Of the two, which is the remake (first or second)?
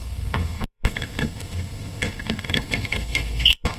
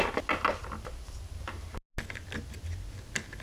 first